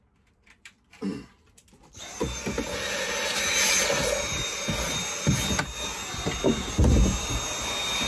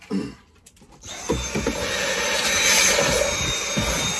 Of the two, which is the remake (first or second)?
second